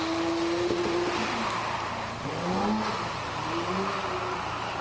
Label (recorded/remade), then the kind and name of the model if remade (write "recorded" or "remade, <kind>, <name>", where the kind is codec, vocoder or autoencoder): recorded